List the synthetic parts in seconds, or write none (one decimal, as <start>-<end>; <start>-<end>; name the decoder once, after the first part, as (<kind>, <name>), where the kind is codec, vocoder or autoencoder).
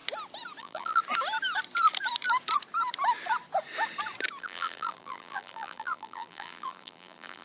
0.6-1.0 (vocoder, BigVGAN v2); 4.4-7.4